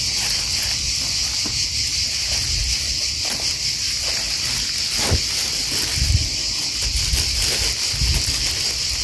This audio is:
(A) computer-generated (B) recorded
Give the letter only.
B